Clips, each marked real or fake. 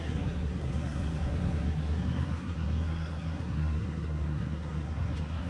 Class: fake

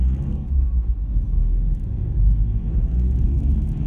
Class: fake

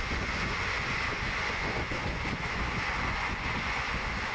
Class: fake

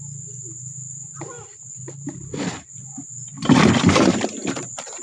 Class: real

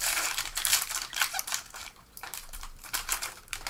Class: fake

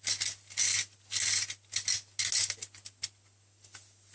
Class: real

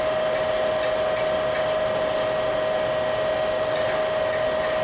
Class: real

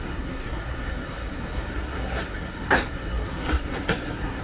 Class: fake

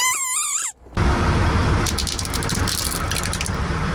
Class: real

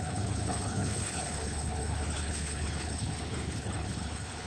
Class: fake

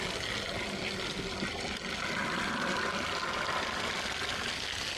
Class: real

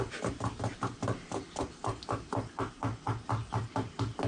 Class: real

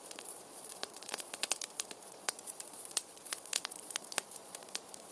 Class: fake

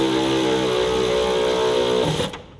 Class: real